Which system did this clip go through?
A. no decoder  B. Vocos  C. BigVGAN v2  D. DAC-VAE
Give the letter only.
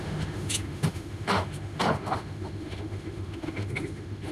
D